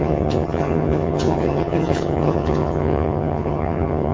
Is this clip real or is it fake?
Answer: fake